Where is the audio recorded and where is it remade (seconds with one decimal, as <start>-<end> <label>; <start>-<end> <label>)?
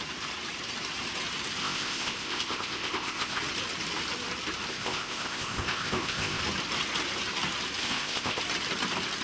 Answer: 0.0-1.6 recorded; 1.6-3.4 remade; 3.4-4.7 recorded; 4.7-6.4 remade; 6.4-7.8 recorded; 7.8-8.4 remade; 8.4-9.2 recorded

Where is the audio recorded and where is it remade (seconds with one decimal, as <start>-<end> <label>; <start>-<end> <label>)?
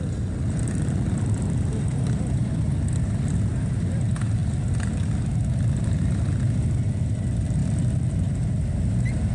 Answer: 0.0-9.3 recorded